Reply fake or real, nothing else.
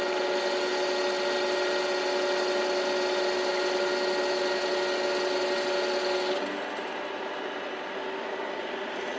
real